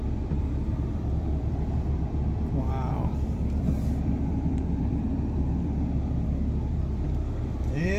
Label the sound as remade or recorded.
remade